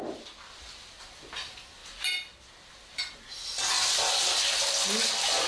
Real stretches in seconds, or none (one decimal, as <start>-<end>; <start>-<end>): 0.0-5.5